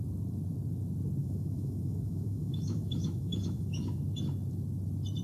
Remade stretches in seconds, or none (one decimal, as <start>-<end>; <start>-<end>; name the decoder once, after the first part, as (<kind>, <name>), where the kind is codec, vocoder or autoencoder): 1.2-4.0 (autoencoder, DAC-VAE)